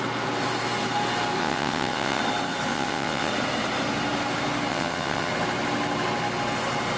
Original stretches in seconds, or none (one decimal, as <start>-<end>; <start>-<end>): 0.0-1.4; 2.2-2.7; 3.3-4.7; 5.3-7.0

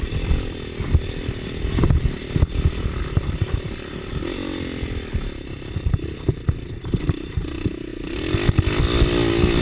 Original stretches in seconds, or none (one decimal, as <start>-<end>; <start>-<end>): 0.0-9.6

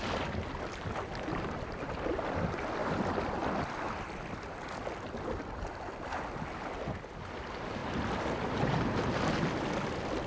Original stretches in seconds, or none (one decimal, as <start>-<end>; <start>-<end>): 0.0-2.8; 4.6-7.8; 8.5-10.3

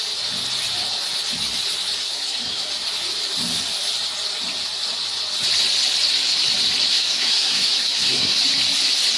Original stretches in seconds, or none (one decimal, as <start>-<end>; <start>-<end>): 0.0-2.0; 2.7-6.9; 8.4-9.2

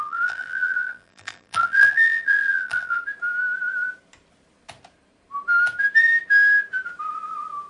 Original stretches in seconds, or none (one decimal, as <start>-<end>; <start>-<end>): 3.0-7.7

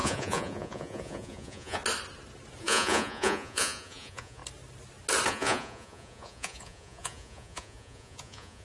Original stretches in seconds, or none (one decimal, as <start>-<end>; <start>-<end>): 1.8-2.6; 4.4-5.3